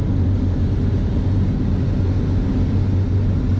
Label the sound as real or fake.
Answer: real